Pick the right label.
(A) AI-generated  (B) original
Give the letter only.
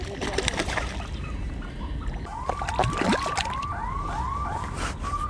B